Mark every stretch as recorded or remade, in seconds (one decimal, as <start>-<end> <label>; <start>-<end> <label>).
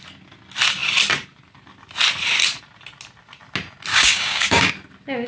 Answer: 0.0-3.9 recorded; 3.9-4.7 remade; 4.7-5.3 recorded